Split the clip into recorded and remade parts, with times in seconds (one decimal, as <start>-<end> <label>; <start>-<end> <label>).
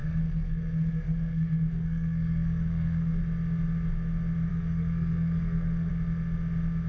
0.0-3.2 remade; 3.2-4.5 recorded; 4.5-5.9 remade; 5.9-6.9 recorded